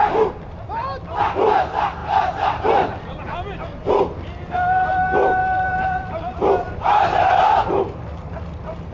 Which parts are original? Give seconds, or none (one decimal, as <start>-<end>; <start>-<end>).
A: 0.0-8.9

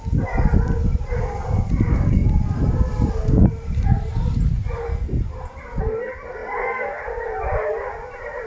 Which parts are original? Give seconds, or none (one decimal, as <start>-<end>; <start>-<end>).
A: 0.0-8.5

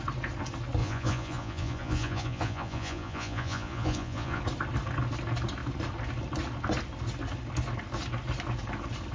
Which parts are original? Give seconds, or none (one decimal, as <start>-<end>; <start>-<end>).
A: 0.0-0.8; 4.4-9.1

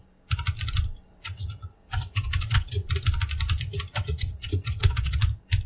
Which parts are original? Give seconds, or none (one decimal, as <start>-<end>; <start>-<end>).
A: 0.0-1.1; 2.9-3.9; 5.2-5.7